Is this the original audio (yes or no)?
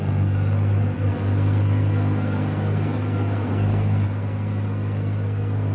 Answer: no